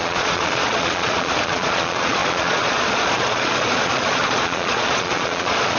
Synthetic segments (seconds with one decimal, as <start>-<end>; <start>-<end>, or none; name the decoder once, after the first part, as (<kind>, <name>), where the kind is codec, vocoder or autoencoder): 0.0-5.8 (vocoder, Vocos)